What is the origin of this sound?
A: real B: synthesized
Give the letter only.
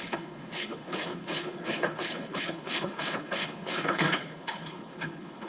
B